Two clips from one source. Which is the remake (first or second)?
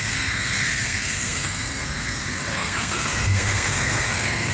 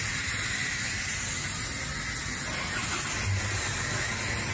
first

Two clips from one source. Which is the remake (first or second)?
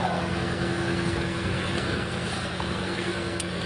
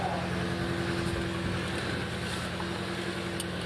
first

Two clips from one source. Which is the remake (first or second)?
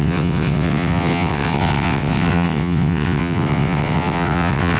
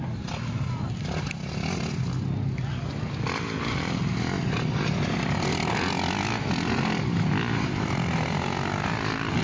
first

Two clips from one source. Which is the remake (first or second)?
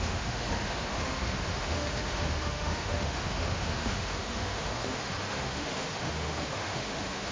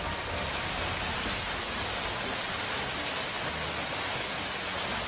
first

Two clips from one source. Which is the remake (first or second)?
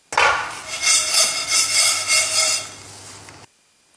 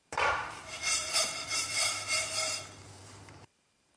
second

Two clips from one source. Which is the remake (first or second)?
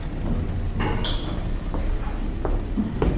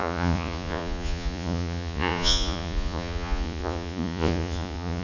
second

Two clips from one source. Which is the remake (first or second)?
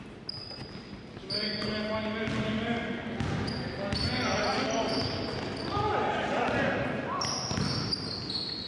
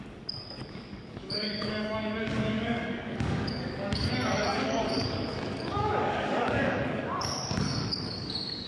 second